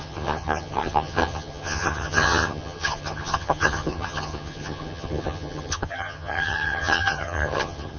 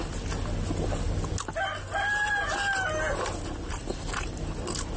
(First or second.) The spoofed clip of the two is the first